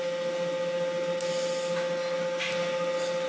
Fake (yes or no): no